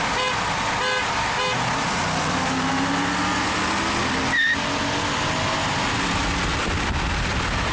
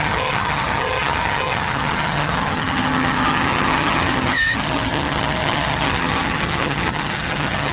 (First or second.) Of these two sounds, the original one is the first